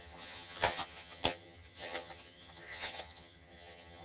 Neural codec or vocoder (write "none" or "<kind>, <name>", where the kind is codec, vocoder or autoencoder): vocoder, HiFi-GAN